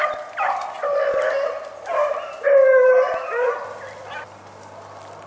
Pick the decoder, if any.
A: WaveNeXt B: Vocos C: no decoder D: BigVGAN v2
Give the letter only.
C